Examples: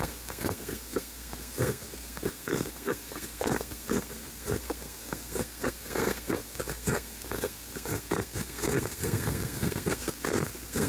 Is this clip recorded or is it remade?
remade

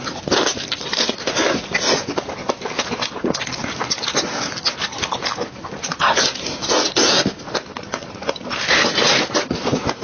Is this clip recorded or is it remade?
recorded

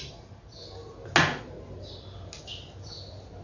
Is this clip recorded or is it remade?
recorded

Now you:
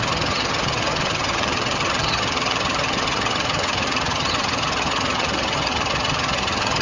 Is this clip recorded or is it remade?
remade